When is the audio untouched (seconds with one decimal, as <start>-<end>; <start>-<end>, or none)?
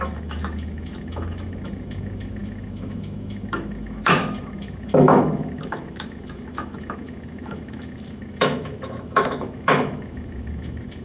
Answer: none